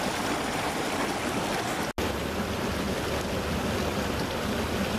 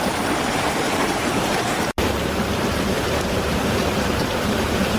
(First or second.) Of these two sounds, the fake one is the second